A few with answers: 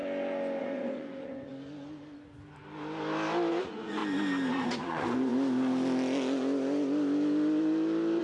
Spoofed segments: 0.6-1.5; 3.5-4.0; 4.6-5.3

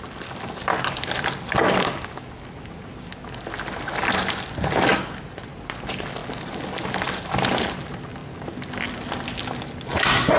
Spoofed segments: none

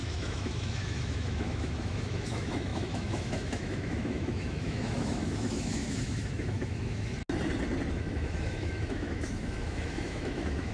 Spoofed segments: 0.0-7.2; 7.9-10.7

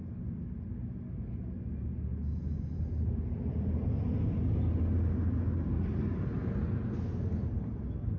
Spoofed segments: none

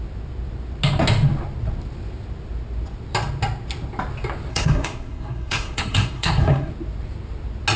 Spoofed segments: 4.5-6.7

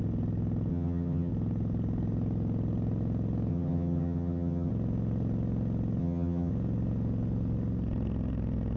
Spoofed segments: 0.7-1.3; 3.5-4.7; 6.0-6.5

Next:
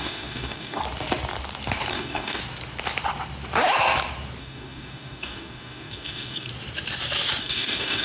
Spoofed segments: 0.0-0.8; 1.9-2.4; 4.4-6.5; 7.4-8.0

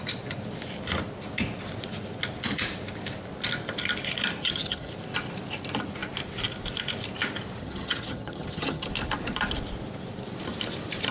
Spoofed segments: 4.4-4.9; 7.6-8.9